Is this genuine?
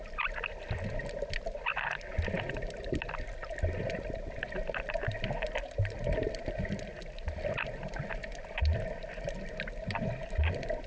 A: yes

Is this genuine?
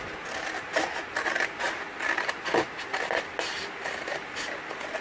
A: yes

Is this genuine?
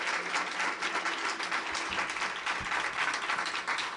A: yes